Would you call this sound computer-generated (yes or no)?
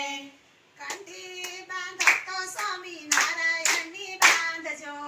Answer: no